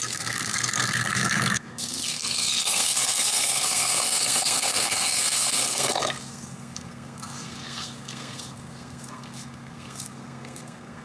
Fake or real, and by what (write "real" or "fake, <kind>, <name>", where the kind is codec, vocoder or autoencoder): fake, codec, SNAC